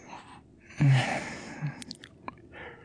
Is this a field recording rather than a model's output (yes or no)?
yes